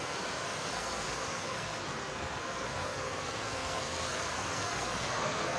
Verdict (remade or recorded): remade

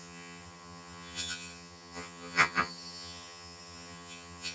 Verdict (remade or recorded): remade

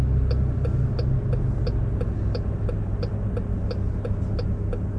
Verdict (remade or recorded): recorded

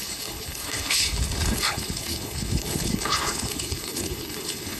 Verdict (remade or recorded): remade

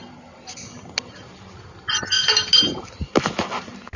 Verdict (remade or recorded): recorded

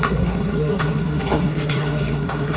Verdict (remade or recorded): remade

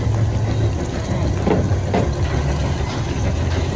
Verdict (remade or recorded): recorded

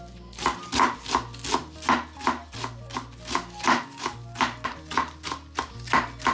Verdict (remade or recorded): recorded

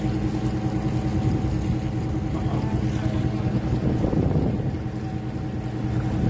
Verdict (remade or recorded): recorded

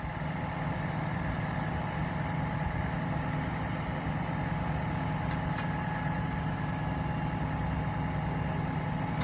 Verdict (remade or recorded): recorded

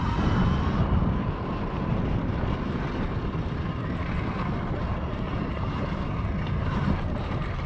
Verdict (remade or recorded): recorded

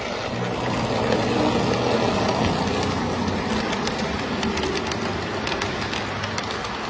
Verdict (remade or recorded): recorded